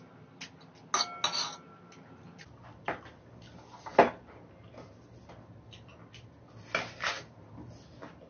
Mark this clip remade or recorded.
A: recorded